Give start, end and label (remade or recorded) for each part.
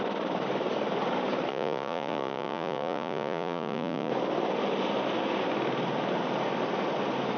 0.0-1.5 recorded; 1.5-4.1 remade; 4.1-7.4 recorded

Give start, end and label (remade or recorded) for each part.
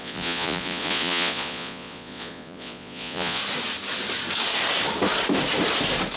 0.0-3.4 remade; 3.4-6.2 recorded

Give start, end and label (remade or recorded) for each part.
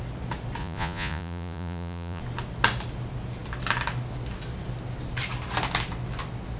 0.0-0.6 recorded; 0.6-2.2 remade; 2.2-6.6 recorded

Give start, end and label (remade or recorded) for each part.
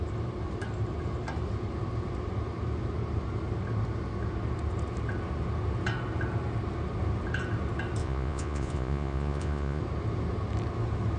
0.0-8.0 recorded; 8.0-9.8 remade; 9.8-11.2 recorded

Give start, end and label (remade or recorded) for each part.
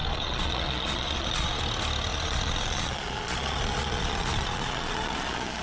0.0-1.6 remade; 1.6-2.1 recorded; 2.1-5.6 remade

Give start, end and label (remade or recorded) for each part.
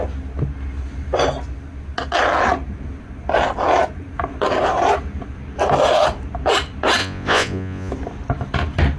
0.0-7.0 recorded; 7.0-7.9 remade; 7.9-9.0 recorded